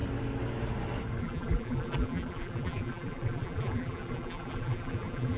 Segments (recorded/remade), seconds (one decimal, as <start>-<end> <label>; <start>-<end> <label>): 0.0-1.2 recorded; 1.2-5.4 remade